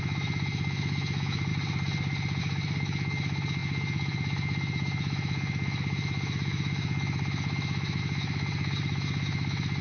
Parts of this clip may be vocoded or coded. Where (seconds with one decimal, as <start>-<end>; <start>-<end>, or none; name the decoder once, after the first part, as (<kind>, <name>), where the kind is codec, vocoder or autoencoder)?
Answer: 0.0-1.5 (autoencoder, DAC-VAE); 2.4-9.8